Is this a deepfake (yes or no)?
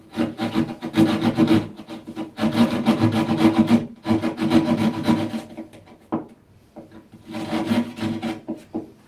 no